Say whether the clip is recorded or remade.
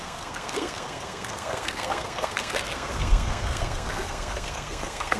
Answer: remade